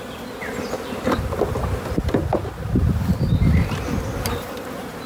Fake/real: real